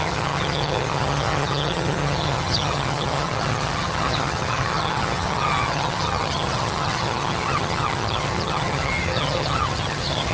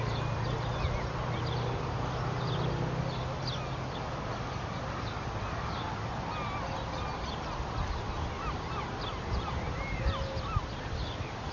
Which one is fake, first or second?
first